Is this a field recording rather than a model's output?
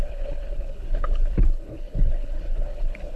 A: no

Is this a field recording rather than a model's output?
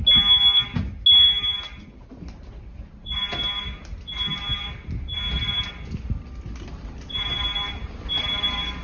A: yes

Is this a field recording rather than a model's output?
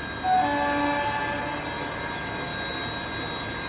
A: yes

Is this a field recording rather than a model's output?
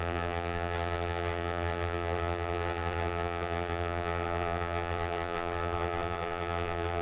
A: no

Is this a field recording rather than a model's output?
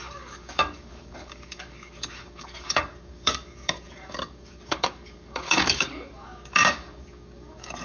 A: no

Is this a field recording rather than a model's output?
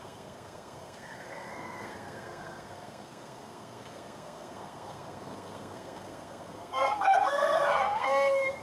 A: no